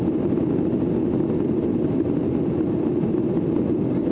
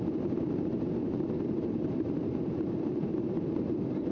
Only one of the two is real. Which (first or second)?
first